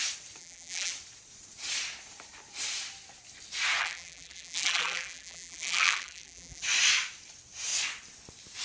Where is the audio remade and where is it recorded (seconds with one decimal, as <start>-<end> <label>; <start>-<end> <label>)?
0.0-0.4 recorded; 0.4-0.9 remade; 0.9-3.8 recorded; 3.8-6.6 remade; 6.6-8.6 recorded